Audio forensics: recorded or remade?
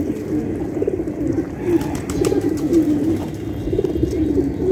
recorded